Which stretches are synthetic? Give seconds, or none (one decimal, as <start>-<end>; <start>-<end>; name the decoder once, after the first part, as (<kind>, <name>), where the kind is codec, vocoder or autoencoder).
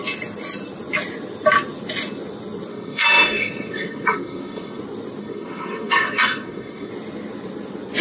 2.7-4.8 (codec, SNAC); 5.2-6.9